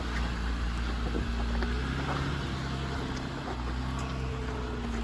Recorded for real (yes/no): yes